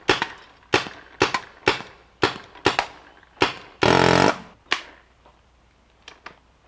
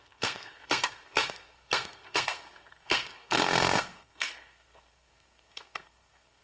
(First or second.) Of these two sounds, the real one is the first